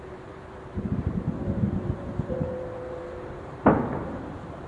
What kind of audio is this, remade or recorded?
remade